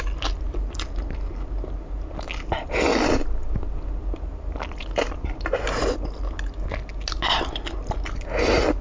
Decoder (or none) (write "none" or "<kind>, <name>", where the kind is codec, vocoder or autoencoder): none